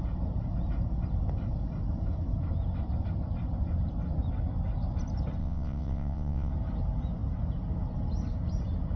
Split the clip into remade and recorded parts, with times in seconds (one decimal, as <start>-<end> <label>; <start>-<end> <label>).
0.0-5.4 recorded; 5.4-6.5 remade; 6.5-9.0 recorded